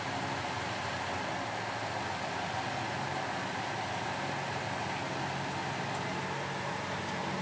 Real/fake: real